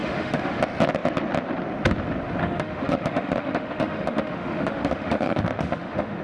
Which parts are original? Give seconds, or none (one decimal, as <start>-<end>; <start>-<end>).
0.6-2.4